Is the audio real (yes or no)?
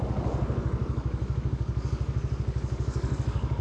no